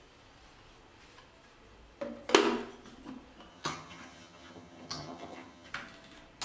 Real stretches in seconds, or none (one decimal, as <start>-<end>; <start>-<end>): 0.0-3.5; 5.7-6.4